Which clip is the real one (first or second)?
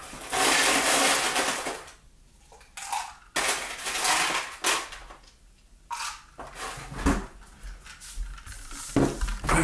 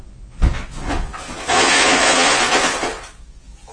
first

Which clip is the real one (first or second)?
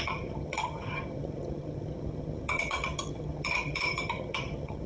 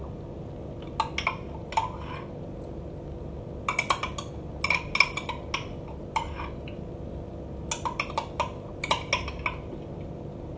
second